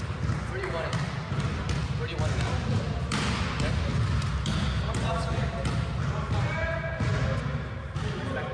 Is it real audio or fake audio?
real